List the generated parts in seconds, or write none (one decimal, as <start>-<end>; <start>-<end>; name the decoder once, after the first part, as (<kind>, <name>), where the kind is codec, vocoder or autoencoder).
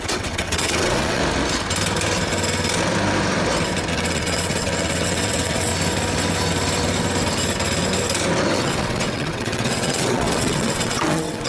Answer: 0.0-1.2 (vocoder, WaveNeXt); 3.9-5.7; 8.5-11.5